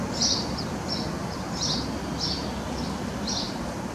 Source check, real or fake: real